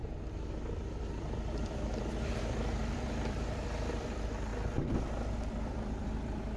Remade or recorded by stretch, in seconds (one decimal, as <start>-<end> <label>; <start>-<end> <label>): 0.0-4.5 remade; 4.5-5.3 recorded; 5.3-6.6 remade